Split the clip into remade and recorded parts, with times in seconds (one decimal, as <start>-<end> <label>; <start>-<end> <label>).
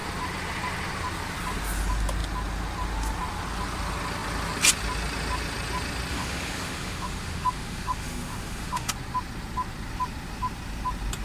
0.0-6.1 recorded; 6.1-8.9 remade; 8.9-11.2 recorded